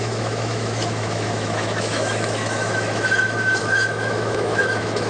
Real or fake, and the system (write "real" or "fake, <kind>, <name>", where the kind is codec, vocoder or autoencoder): fake, autoencoder, DAC-VAE